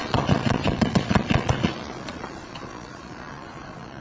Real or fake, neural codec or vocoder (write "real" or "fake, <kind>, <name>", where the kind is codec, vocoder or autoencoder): fake, vocoder, Vocos